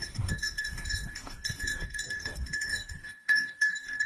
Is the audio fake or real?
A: fake